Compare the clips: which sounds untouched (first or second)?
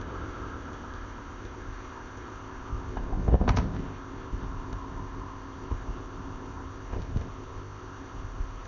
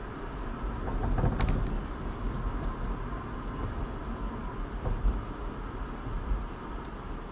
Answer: second